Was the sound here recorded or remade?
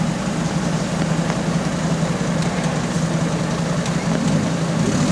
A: recorded